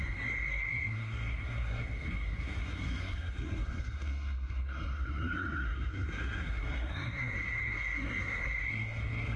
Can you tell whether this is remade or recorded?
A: remade